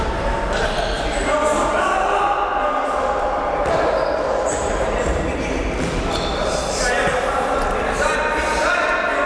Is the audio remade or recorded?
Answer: recorded